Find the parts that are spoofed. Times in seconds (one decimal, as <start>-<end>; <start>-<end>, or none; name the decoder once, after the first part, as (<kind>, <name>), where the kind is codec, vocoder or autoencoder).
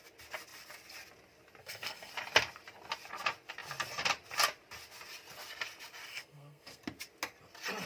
1.6-2.1 (codec, SNAC); 6.1-6.8